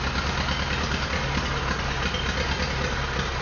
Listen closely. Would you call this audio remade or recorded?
recorded